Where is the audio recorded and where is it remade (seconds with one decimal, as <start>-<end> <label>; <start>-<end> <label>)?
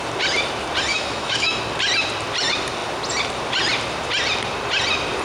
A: 0.0-0.9 recorded; 0.9-1.6 remade; 1.6-5.2 recorded